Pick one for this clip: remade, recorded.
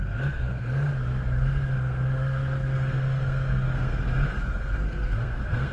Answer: remade